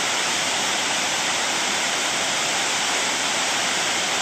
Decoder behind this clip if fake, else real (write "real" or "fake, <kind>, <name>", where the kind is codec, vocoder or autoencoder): fake, vocoder, BigVGAN v2